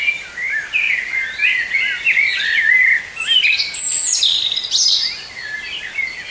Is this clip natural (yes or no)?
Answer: yes